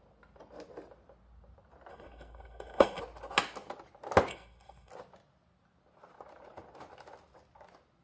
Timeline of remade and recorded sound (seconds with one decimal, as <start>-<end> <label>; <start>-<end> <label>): 0.0-1.9 recorded; 1.9-3.0 remade; 3.0-4.3 recorded; 4.3-4.9 remade; 4.9-8.0 recorded